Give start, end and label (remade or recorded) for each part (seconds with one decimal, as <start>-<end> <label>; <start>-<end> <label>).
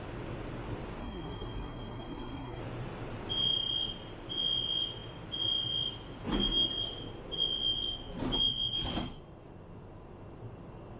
0.0-1.0 recorded; 1.0-2.6 remade; 2.6-11.0 recorded